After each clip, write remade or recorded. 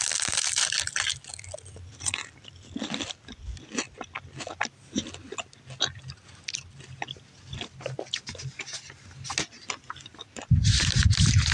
recorded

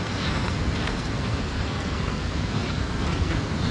remade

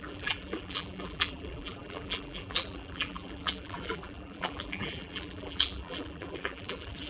remade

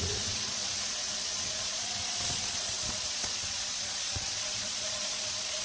remade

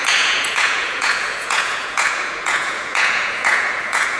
remade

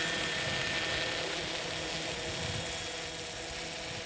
recorded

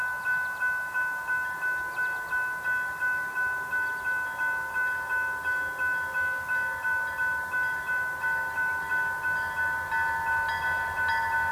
recorded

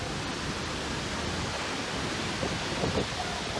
recorded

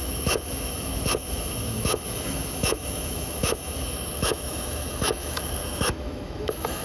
remade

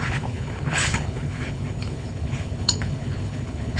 remade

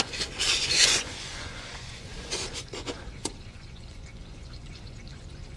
remade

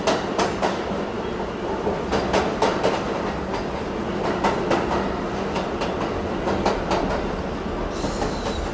recorded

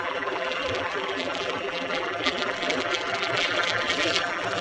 remade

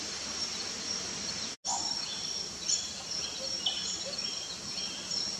recorded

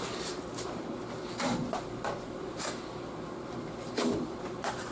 remade